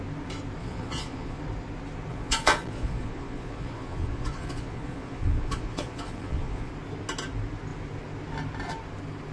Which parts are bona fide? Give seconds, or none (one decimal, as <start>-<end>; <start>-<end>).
0.0-0.6; 1.4-2.1; 6.7-9.3